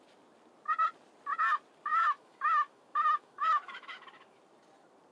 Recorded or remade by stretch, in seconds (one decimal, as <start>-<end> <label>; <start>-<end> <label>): 0.0-1.9 recorded; 1.9-4.4 remade; 4.4-5.1 recorded